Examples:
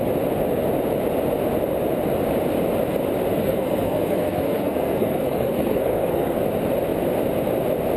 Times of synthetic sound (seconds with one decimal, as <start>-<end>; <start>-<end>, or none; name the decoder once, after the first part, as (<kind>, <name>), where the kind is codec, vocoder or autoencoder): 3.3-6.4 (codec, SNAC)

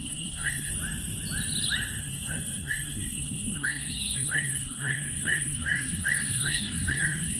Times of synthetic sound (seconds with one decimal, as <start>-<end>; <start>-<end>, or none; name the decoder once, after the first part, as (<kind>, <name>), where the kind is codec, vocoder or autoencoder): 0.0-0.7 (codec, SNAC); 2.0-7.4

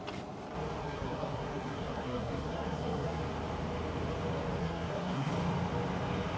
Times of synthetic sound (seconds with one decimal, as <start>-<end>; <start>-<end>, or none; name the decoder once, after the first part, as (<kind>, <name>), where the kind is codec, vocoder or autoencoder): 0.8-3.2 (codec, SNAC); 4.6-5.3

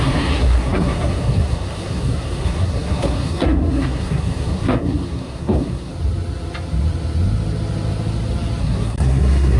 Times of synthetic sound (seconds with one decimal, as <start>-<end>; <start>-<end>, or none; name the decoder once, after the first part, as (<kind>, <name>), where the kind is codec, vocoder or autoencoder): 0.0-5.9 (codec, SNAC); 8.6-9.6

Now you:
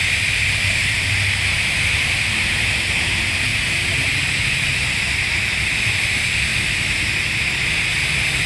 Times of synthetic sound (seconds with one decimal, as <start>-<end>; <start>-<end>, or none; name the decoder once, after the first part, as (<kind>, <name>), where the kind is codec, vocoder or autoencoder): none

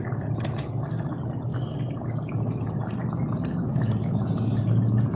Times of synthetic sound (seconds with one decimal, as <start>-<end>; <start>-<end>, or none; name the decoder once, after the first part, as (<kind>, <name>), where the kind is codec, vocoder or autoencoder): none

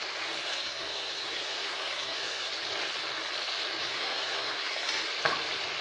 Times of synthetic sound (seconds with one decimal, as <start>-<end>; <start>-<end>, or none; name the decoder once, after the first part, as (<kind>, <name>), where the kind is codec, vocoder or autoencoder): 0.5-2.5 (codec, SNAC); 3.8-4.9